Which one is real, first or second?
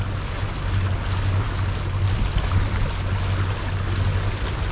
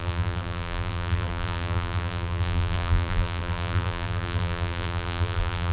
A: first